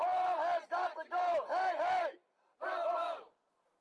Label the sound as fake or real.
real